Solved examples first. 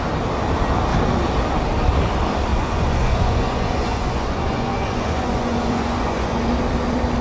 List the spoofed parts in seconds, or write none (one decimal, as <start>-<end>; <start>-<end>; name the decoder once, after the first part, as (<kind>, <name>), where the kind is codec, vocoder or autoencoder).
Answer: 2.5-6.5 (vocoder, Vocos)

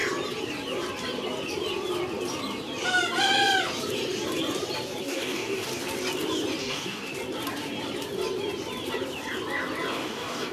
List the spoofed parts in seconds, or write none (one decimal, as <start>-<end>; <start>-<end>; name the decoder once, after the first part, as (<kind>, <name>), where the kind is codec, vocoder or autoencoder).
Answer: 5.0-5.7 (codec, DAC); 6.6-7.1; 9.9-10.5

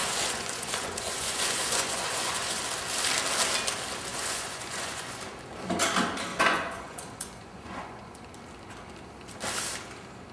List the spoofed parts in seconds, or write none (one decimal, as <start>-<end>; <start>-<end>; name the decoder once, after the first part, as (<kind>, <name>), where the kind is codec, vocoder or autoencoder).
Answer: 0.0-2.6 (vocoder, Vocos); 4.1-5.2; 6.3-8.3

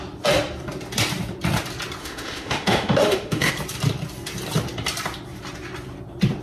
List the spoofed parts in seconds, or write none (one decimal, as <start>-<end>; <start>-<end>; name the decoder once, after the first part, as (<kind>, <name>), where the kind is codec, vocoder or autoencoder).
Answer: 2.0-3.5 (autoencoder, DAC-VAE)

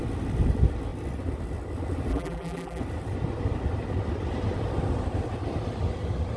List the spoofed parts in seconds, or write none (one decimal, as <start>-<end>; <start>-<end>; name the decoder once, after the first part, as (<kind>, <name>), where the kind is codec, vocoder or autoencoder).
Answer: 2.1-2.8 (vocoder, BigVGAN v2)

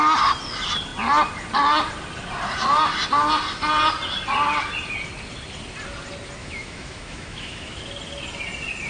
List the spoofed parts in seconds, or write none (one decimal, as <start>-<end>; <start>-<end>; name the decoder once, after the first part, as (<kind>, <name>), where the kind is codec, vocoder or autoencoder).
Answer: 6.4-7.8 (autoencoder, DAC-VAE)